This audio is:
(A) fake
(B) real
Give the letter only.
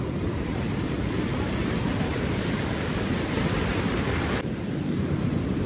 A